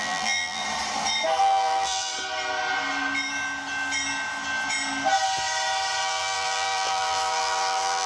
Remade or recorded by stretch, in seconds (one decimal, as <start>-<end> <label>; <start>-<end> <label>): 0.0-0.6 remade; 0.6-1.4 recorded; 1.4-2.1 remade; 2.1-6.0 recorded; 6.0-8.1 remade